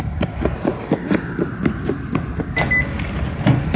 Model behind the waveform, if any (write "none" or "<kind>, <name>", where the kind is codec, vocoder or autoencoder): none